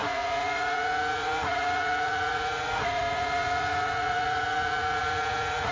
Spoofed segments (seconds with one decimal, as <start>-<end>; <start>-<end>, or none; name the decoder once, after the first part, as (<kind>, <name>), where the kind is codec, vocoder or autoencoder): 0.0-5.7 (vocoder, Vocos)